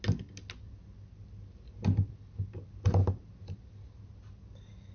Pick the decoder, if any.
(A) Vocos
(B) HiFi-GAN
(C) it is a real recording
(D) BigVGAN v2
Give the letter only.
C